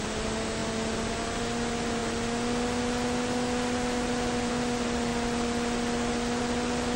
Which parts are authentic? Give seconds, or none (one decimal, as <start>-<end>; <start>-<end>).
0.0-7.0